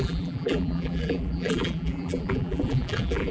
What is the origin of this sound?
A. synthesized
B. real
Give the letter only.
A